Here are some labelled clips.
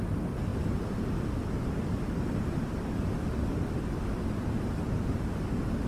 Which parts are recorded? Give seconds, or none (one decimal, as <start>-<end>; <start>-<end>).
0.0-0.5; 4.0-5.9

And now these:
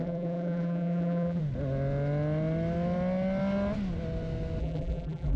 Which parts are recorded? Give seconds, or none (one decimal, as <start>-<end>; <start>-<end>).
1.4-4.6

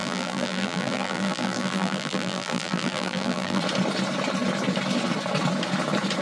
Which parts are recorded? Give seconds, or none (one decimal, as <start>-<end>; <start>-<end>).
3.6-6.2

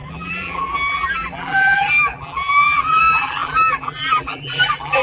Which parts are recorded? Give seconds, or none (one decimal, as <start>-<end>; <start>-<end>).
none

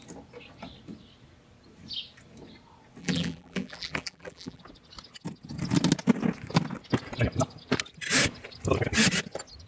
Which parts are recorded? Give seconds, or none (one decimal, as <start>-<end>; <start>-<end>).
0.0-3.0; 4.6-9.7

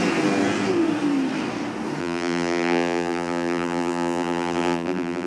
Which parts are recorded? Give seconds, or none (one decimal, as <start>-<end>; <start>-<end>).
0.0-2.0

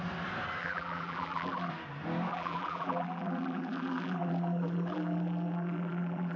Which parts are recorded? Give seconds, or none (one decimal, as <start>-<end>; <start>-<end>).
0.0-0.6; 1.7-2.3